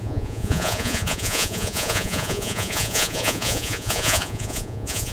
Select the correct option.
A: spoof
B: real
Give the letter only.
A